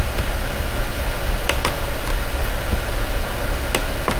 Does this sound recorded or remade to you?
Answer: recorded